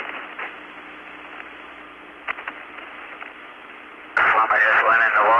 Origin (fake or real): real